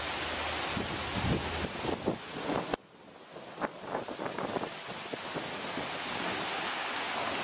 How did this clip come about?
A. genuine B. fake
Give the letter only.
A